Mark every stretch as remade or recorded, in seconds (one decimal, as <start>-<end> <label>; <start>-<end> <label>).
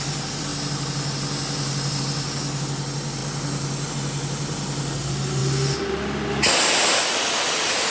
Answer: 0.0-7.9 recorded